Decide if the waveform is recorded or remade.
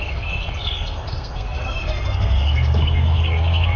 remade